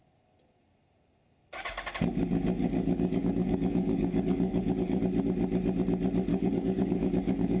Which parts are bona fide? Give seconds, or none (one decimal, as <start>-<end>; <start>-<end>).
0.0-2.6; 5.0-6.3